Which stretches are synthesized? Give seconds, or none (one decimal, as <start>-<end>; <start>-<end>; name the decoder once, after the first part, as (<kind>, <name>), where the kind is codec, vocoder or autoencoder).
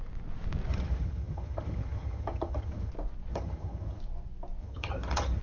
0.7-2.9 (vocoder, HiFi-GAN); 3.3-4.0; 4.6-5.4